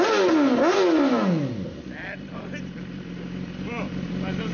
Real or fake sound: real